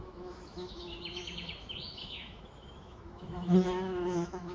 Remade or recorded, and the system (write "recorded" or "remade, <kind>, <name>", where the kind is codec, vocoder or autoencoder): remade, autoencoder, DAC-VAE